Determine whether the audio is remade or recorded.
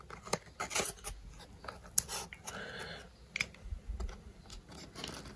recorded